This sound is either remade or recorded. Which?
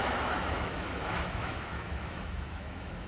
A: remade